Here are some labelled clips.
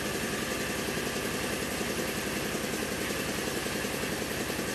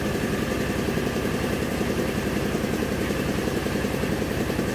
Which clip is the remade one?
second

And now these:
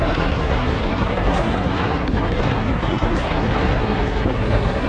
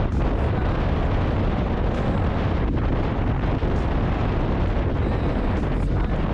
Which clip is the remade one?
first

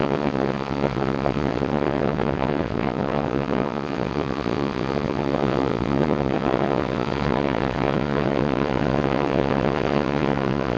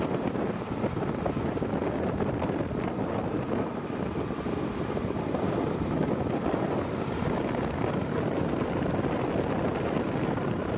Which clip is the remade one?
first